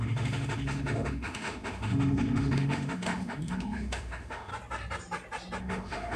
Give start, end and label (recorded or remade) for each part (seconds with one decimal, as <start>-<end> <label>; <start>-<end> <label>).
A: 0.0-4.5 remade; 4.5-5.6 recorded; 5.6-6.2 remade